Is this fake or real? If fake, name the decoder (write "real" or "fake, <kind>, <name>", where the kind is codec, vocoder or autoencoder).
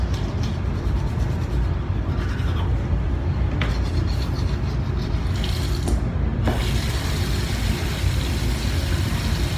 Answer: real